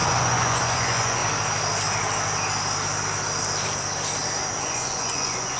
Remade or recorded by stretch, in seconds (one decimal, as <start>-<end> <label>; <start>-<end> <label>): 0.0-1.2 remade; 1.2-4.6 recorded; 4.6-5.6 remade